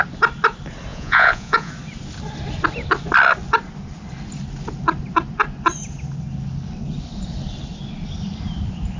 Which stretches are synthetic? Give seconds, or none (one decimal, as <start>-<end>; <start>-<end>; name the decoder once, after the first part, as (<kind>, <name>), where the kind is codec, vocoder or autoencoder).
0.9-1.7 (vocoder, Vocos)